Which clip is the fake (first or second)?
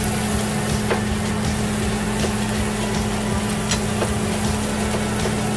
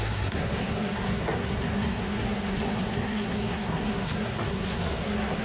second